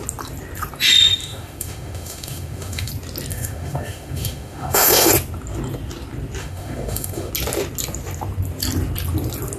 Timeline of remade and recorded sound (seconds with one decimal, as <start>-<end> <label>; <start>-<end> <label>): 0.0-1.2 recorded; 1.2-2.9 remade; 2.9-3.3 recorded; 3.3-5.1 remade; 5.1-6.4 recorded; 6.4-7.3 remade; 7.3-9.6 recorded